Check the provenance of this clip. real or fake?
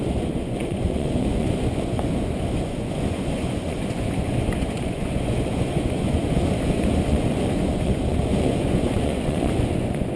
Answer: fake